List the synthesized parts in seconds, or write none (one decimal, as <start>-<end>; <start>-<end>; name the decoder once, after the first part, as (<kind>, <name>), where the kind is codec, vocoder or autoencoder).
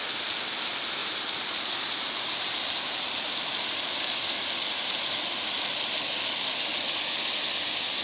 1.0-4.2 (vocoder, BigVGAN v2)